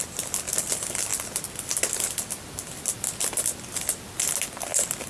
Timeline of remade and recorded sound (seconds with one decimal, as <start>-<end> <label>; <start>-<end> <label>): 0.0-5.1 recorded